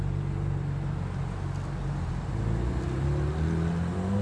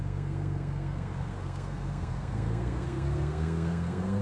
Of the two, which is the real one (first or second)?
first